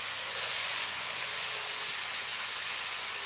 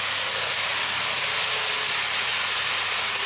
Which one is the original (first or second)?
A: second